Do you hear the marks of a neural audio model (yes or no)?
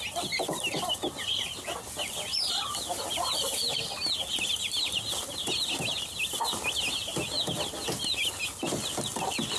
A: no